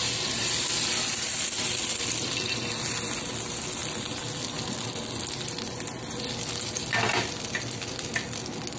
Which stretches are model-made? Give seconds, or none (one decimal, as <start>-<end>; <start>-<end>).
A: none